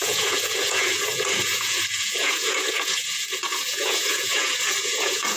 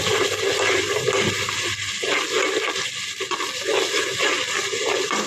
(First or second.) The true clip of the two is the second